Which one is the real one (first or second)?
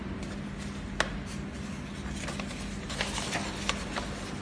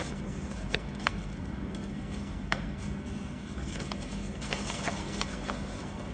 first